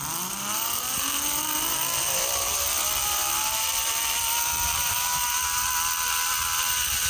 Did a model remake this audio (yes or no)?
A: no